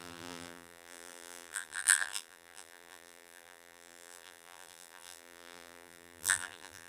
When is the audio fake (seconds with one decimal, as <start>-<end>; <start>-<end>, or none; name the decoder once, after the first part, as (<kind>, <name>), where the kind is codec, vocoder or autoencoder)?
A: 0.0-6.9 (vocoder, BigVGAN v2)